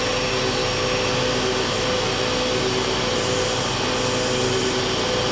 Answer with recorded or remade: recorded